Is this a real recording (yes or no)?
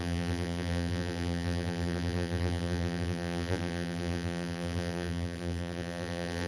no